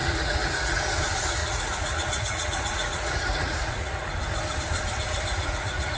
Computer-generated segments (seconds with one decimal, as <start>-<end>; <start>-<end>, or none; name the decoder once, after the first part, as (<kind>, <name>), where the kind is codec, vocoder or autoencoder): 0.0-0.8 (vocoder, Vocos); 1.4-4.1; 5.3-6.0